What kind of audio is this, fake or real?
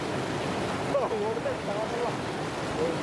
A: real